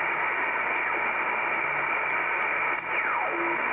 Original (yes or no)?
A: yes